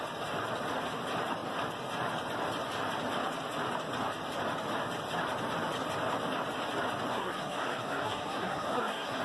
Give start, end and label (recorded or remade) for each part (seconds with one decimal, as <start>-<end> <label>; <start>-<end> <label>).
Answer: 0.0-7.1 recorded; 7.1-9.2 remade